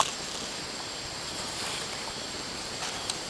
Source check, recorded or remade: remade